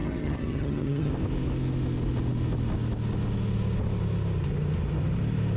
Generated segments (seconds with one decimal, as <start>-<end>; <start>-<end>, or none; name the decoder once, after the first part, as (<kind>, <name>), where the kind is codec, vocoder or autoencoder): 0.0-1.1 (vocoder, HiFi-GAN)